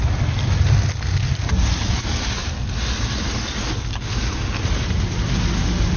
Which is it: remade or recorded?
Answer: recorded